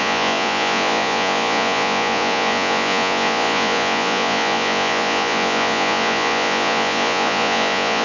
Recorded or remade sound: remade